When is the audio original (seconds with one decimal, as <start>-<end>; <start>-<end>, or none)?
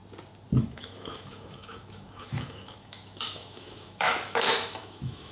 0.0-0.6